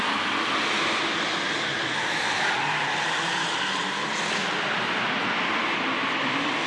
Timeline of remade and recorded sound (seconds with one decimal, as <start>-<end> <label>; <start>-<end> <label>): 0.0-6.7 recorded